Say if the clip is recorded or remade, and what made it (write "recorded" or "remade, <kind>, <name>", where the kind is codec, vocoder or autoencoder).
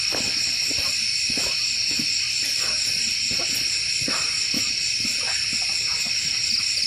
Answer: recorded